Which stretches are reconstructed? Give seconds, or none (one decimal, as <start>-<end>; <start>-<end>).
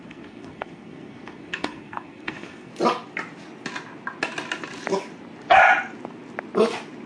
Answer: 0.0-2.7